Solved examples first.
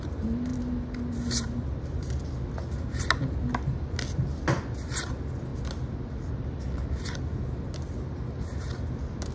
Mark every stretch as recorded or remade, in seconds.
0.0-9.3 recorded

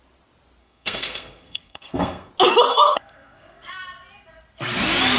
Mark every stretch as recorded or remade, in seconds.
0.0-0.6 recorded; 0.6-2.3 remade; 2.3-2.7 recorded; 2.7-3.7 remade; 3.7-5.2 recorded

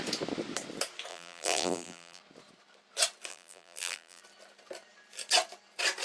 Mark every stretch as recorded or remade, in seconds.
0.0-1.1 recorded; 1.1-2.2 remade; 2.2-3.3 recorded; 3.3-4.2 remade; 4.2-6.0 recorded